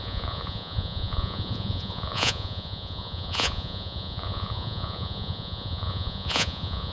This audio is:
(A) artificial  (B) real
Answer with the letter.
A